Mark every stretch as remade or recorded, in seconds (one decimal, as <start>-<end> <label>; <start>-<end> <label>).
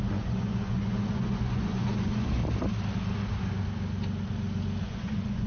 0.0-2.4 remade; 2.4-4.8 recorded; 4.8-5.5 remade